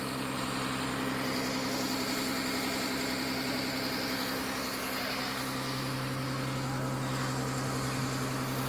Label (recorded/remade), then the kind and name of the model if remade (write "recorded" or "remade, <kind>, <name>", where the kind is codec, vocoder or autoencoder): recorded